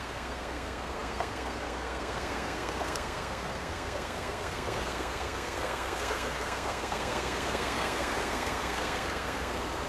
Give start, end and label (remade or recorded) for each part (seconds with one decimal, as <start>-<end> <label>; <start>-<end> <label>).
0.0-9.9 remade